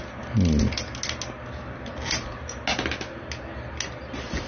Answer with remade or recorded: recorded